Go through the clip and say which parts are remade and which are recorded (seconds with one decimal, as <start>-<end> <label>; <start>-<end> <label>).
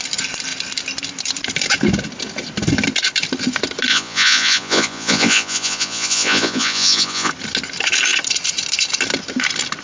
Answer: 0.0-3.9 recorded; 3.9-7.3 remade; 7.3-9.8 recorded